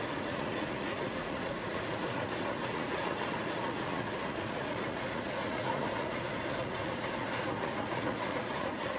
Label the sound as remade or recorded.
remade